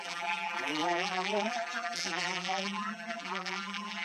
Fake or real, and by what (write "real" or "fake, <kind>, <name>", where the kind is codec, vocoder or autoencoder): fake, vocoder, BigVGAN v2